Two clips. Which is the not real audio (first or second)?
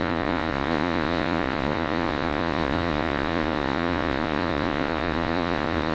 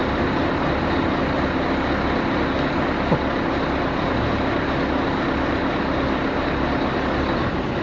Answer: first